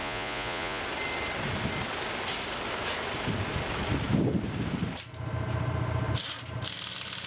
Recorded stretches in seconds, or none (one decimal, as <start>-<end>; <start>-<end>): 0.8-7.3